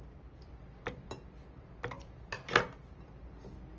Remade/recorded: recorded